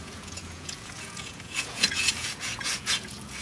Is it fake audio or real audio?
fake